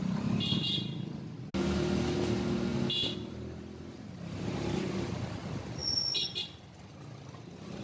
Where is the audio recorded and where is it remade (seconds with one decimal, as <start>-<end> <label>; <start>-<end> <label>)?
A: 0.0-7.8 recorded